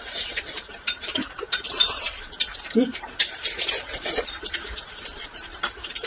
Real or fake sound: fake